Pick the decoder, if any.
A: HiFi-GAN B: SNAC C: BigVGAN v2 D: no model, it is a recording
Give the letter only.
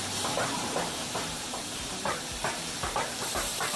C